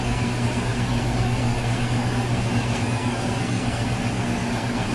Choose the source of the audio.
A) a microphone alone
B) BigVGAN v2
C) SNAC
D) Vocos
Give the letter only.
C